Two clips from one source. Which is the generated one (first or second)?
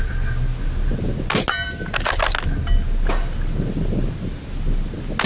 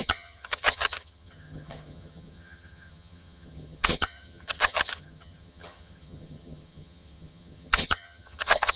second